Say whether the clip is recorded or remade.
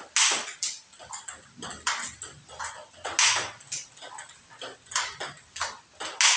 recorded